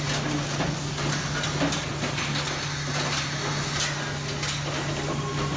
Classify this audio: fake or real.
real